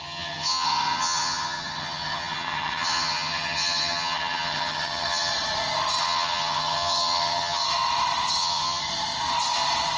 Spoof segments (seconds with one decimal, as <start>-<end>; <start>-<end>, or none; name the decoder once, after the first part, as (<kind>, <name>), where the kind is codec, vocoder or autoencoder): 0.0-5.3 (vocoder, HiFi-GAN); 6.0-7.6; 8.4-8.8